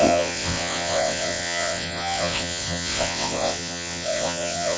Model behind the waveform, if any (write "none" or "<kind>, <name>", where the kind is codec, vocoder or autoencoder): vocoder, WaveNeXt